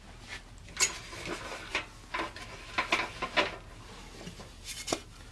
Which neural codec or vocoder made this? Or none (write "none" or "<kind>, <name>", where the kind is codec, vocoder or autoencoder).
none